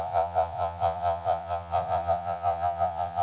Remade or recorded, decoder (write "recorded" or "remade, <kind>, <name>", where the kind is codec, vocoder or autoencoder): remade, vocoder, Vocos